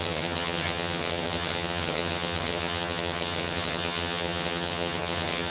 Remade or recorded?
remade